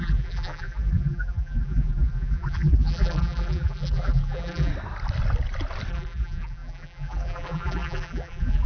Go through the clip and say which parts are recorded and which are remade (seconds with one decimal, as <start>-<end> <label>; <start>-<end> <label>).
0.0-4.7 remade; 4.7-5.9 recorded; 5.9-8.7 remade